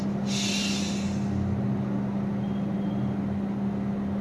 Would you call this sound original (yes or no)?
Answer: yes